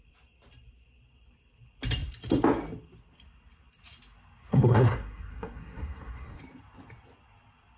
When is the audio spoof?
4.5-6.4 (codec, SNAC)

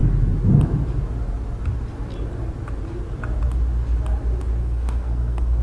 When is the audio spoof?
4.6-5.6 (codec, SNAC)

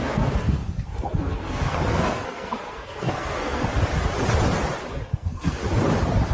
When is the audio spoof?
0.0-3.7 (codec, SNAC); 5.1-5.6

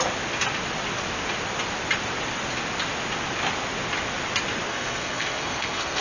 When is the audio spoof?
4.7-6.0 (codec, SNAC)